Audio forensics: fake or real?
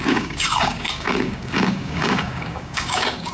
fake